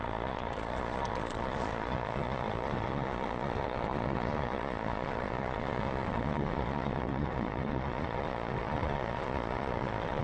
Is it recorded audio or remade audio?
remade